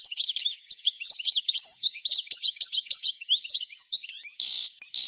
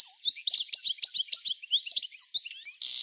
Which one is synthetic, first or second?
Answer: first